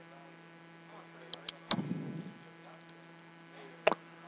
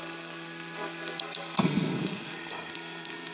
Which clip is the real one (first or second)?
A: first